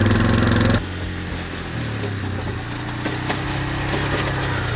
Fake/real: real